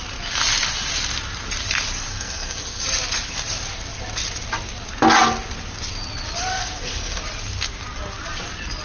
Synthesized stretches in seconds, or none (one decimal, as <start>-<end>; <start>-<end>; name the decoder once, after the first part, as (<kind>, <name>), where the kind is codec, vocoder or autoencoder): 2.1-2.8 (codec, SNAC); 6.5-7.2